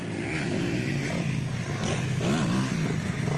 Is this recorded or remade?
recorded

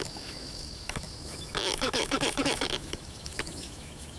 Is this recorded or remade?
remade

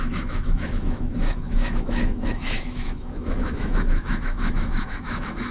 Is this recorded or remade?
remade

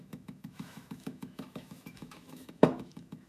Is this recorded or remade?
remade